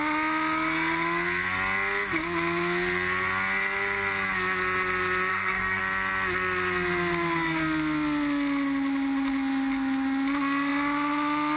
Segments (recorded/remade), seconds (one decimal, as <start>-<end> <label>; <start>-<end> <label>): 0.0-5.3 recorded; 5.3-5.8 remade; 5.8-11.6 recorded